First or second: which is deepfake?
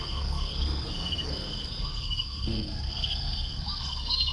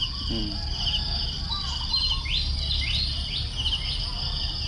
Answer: first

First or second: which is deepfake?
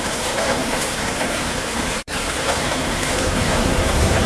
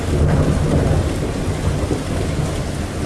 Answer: first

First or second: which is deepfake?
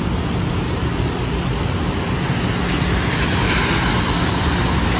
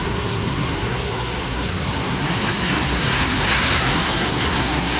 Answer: second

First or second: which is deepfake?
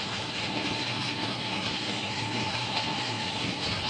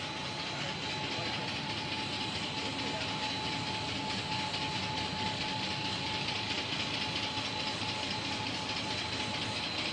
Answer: first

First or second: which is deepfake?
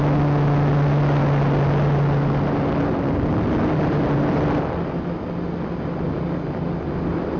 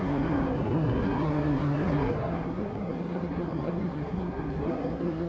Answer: second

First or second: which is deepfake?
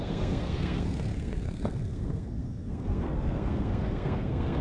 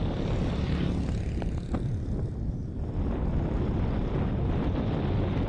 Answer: first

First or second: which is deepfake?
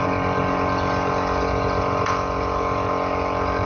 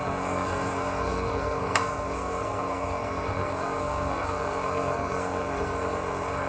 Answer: second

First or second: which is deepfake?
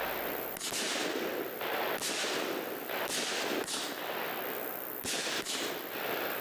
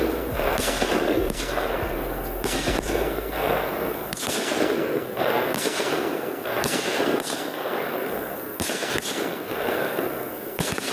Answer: second